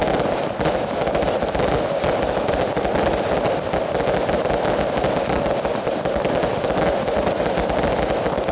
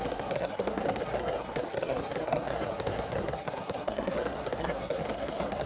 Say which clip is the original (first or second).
first